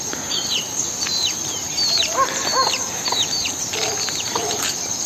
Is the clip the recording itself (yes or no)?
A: yes